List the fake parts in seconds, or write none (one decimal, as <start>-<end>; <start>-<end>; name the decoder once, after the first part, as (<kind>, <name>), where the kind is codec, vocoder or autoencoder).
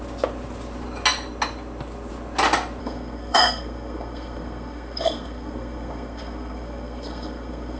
2.8-7.8 (codec, SNAC)